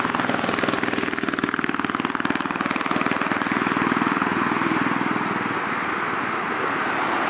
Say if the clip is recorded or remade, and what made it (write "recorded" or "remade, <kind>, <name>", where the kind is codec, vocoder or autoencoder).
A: recorded